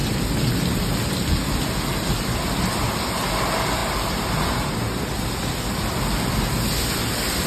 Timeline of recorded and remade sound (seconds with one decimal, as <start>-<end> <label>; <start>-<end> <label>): 0.0-7.5 recorded